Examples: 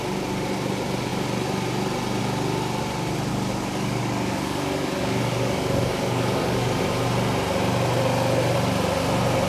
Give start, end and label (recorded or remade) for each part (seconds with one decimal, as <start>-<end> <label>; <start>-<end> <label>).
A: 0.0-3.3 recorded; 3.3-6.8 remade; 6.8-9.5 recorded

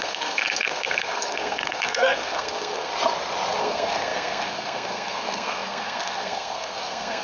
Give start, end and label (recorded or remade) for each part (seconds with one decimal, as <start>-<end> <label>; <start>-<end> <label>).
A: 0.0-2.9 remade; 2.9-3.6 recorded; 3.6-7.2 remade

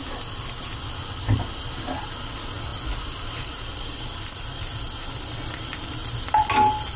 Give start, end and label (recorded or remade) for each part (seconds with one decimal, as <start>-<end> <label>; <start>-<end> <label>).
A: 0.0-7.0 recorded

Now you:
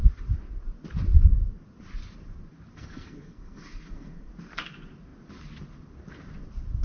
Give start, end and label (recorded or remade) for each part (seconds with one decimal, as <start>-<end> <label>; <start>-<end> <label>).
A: 0.0-2.7 recorded; 2.7-4.3 remade; 4.3-6.8 recorded

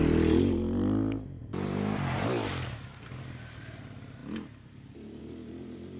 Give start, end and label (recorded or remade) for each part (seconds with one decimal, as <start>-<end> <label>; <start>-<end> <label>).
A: 0.0-6.0 recorded

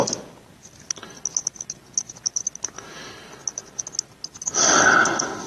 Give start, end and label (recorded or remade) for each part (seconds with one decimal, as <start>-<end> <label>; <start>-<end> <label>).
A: 0.0-5.5 recorded